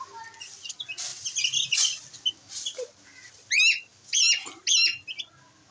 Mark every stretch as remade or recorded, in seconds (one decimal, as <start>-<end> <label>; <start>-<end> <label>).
0.0-5.7 recorded